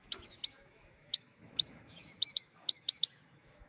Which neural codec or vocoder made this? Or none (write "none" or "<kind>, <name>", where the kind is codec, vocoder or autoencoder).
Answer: autoencoder, DAC-VAE